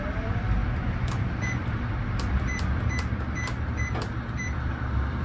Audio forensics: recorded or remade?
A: remade